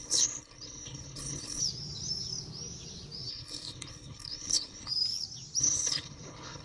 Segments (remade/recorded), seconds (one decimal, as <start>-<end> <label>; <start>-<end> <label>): 0.0-1.6 remade; 1.6-3.3 recorded; 3.3-4.9 remade; 4.9-5.6 recorded; 5.6-6.6 remade